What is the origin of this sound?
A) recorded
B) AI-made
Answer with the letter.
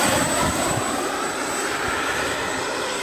B